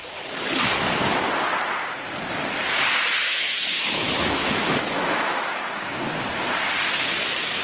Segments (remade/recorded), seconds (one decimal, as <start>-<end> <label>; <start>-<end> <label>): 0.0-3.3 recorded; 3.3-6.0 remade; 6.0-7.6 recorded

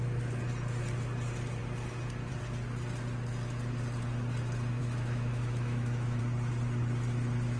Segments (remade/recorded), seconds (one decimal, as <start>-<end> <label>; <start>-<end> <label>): 0.0-4.8 recorded; 4.8-6.2 remade; 6.2-7.6 recorded

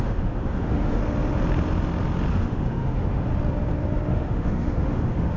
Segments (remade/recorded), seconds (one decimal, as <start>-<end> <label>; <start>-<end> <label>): 0.0-1.0 remade; 1.0-2.3 recorded; 2.3-3.3 remade; 3.3-4.1 recorded; 4.1-5.4 remade

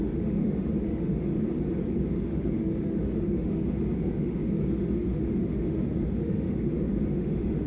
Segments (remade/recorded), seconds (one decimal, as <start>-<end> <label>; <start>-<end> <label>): 0.0-1.3 remade; 1.3-2.1 recorded; 2.1-7.7 remade

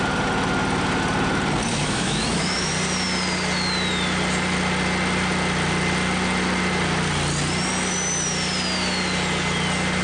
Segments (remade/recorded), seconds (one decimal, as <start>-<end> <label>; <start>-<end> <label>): 0.0-1.7 recorded; 1.7-2.7 remade; 2.7-10.0 recorded

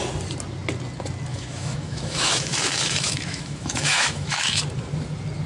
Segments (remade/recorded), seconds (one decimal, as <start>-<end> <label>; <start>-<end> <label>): 0.0-1.3 recorded; 1.3-4.6 remade; 4.6-5.5 recorded